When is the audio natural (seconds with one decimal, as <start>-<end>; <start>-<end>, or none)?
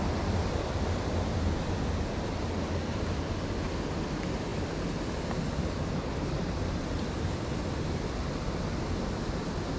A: 0.0-9.8